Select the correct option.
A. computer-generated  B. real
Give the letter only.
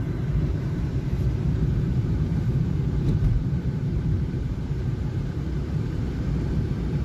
A